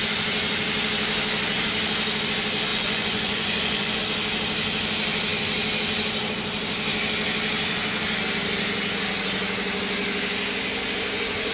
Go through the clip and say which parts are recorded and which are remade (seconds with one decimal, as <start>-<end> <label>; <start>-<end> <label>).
0.0-2.7 recorded; 2.7-4.0 remade; 4.0-11.5 recorded

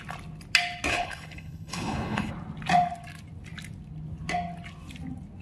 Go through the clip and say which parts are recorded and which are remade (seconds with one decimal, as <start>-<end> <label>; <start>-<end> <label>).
0.0-0.9 recorded; 0.9-2.3 remade; 2.3-5.4 recorded